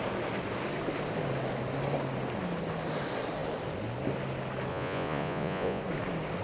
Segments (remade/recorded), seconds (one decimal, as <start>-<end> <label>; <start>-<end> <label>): 0.0-4.7 recorded; 4.7-5.8 remade; 5.8-6.4 recorded